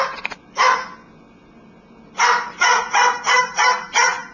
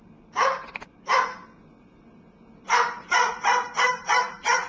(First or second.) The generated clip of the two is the second